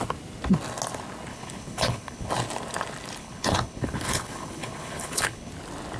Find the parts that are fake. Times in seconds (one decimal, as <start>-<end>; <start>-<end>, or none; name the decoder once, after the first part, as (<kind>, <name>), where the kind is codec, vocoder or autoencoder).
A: 1.3-2.3 (codec, HILCodec); 3.2-5.5